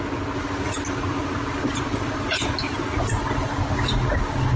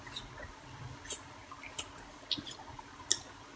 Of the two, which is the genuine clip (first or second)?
first